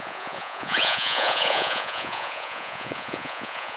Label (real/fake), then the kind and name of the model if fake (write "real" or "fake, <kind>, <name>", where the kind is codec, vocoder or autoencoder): fake, vocoder, Vocos